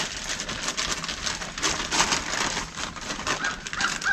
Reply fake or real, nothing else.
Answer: real